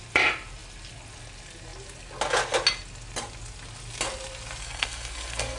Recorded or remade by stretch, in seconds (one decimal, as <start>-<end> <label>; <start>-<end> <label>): 0.0-4.6 recorded; 4.6-5.6 remade